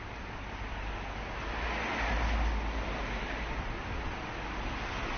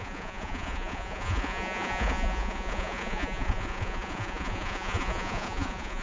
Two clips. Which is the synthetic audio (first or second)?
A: second